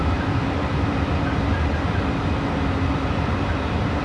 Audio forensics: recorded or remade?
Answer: recorded